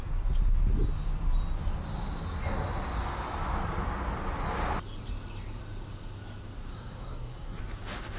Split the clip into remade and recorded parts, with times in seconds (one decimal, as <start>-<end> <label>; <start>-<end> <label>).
0.0-6.7 recorded; 6.7-7.6 remade; 7.6-8.2 recorded